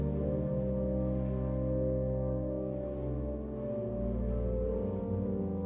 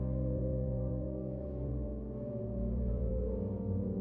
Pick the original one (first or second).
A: first